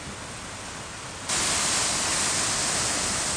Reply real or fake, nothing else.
real